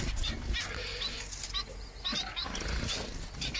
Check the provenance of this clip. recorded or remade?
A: recorded